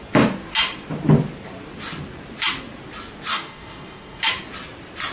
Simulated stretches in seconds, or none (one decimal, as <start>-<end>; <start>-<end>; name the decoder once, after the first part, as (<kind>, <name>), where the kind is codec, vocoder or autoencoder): 3.3-4.2 (codec, DAC)